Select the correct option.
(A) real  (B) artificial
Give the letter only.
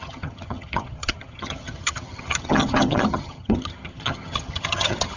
B